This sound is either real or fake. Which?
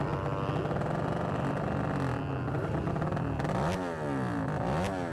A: real